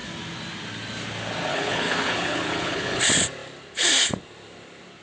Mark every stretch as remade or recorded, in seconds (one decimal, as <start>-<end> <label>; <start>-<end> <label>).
0.0-1.5 recorded; 1.5-3.0 remade; 3.0-5.0 recorded